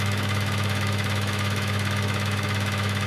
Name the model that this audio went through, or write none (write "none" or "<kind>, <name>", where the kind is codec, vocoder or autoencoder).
autoencoder, DAC-VAE